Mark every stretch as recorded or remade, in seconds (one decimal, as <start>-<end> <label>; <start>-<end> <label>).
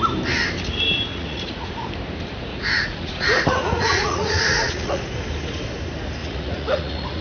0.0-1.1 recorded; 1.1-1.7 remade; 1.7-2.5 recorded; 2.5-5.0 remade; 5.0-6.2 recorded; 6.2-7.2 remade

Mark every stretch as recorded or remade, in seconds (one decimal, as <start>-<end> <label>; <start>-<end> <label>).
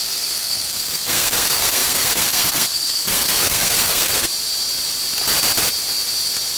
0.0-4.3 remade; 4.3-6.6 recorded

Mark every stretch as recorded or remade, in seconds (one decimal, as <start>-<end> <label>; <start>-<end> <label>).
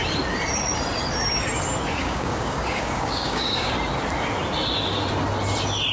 0.0-2.0 recorded; 2.0-3.7 remade; 3.7-5.9 recorded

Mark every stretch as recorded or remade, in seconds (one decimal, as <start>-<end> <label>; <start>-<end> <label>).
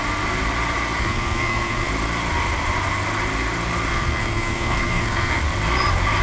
0.0-1.0 recorded; 1.0-1.9 remade; 1.9-3.9 recorded; 3.9-5.4 remade; 5.4-6.2 recorded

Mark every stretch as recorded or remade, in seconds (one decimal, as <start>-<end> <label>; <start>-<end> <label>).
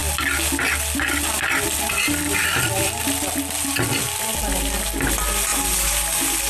0.0-6.5 recorded